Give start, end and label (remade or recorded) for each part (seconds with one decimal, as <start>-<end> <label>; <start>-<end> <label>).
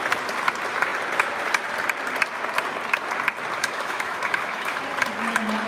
0.0-3.6 recorded; 3.6-4.8 remade; 4.8-5.7 recorded